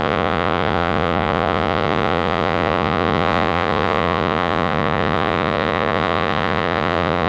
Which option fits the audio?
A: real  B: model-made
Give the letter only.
B